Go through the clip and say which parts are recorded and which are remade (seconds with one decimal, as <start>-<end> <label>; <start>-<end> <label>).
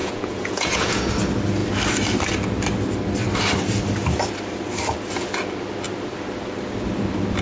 0.0-1.1 remade; 1.1-7.4 recorded